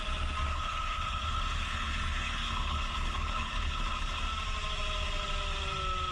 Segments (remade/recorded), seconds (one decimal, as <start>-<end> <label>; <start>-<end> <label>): 0.0-0.5 recorded; 0.5-4.2 remade; 4.2-6.1 recorded